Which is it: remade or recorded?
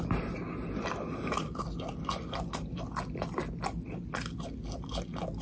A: recorded